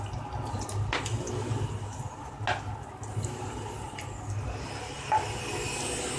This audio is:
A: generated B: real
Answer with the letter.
B